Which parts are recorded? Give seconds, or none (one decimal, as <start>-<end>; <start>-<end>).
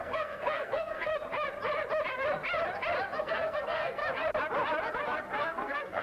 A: 1.1-3.2; 4.0-5.4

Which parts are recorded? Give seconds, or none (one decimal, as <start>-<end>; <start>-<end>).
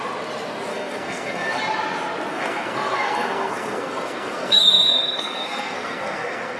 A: 0.0-0.7; 1.6-2.3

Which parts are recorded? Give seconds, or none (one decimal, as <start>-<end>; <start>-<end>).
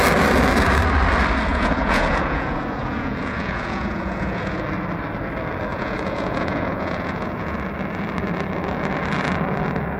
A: 0.0-1.5; 4.6-5.7; 7.6-10.0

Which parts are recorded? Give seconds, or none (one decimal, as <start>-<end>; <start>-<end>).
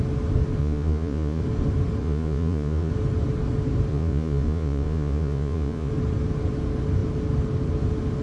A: 0.0-0.6; 1.4-2.0; 2.9-3.9; 5.9-8.2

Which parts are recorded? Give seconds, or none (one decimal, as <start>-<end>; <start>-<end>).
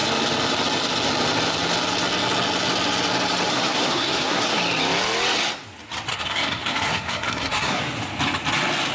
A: 0.0-3.5; 4.6-6.1; 7.8-8.9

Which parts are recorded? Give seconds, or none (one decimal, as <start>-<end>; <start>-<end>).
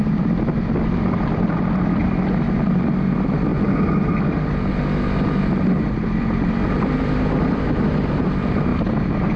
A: 3.5-5.9; 8.7-9.4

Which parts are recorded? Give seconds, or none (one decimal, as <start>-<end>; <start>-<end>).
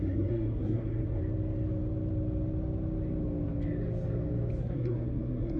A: 1.2-4.6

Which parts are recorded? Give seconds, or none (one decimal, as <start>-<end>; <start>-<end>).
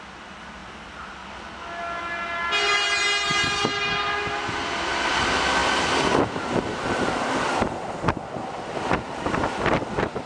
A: 0.0-10.3